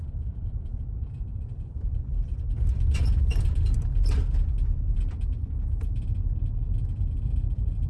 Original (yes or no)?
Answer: no